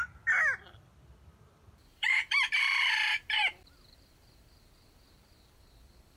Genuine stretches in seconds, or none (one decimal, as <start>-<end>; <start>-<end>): 0.0-1.9; 5.6-6.2